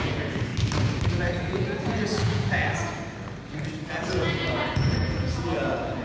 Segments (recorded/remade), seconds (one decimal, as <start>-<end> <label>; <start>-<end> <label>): 0.0-0.5 remade; 0.5-1.1 recorded; 1.1-2.6 remade; 2.6-4.0 recorded; 4.0-6.0 remade